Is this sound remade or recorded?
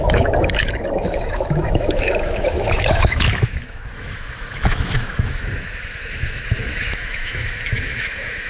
remade